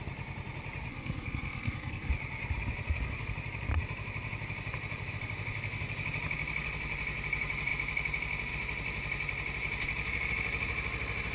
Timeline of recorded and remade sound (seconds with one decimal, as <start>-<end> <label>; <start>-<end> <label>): 0.0-0.9 recorded; 0.9-2.1 remade; 2.1-11.3 recorded